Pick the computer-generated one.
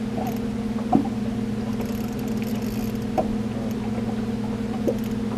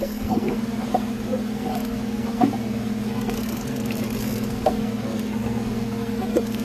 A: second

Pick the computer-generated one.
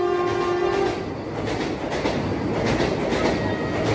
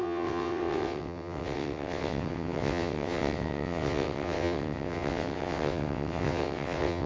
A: second